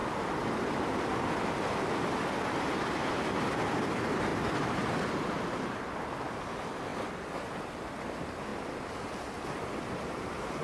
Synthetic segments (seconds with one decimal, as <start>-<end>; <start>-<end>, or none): none

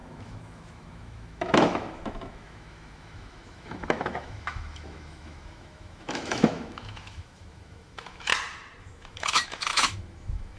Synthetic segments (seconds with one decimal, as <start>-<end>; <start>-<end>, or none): 0.0-8.3; 8.8-10.6

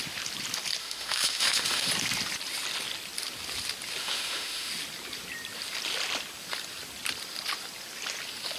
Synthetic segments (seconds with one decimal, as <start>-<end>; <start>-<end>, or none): 0.8-1.9; 4.0-4.7